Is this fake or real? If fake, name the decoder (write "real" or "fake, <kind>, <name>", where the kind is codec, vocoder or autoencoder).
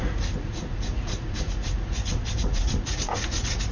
fake, vocoder, Vocos